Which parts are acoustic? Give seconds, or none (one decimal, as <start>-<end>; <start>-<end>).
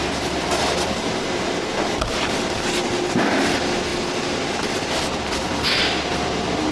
0.0-6.7